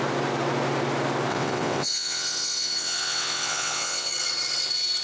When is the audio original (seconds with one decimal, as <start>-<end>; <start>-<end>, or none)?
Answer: 0.0-1.3; 4.1-5.0